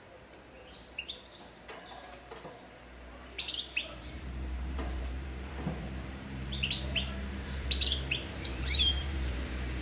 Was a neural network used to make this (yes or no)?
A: yes